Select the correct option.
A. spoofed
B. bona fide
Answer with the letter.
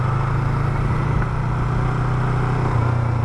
B